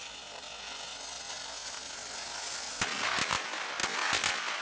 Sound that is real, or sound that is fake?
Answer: real